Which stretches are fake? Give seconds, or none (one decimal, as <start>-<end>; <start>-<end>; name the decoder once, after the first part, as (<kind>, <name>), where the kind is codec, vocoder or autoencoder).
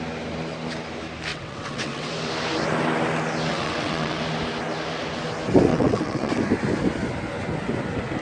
1.3-2.1 (vocoder, WaveNeXt); 3.5-4.2; 5.7-6.3